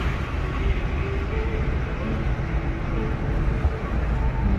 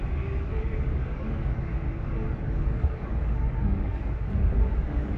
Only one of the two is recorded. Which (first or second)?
first